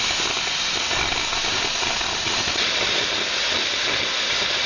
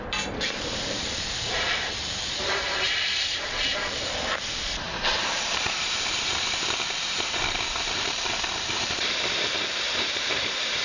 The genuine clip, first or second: first